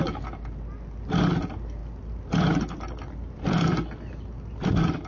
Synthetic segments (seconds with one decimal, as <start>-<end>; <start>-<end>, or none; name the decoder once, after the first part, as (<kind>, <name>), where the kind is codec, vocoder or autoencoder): none